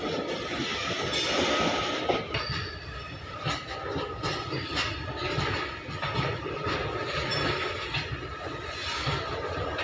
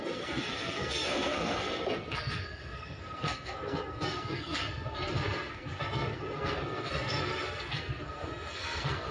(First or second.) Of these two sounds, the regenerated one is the second